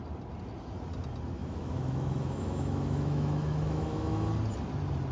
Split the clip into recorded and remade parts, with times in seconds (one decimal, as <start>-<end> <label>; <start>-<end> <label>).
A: 0.0-1.4 recorded; 1.4-4.3 remade; 4.3-5.1 recorded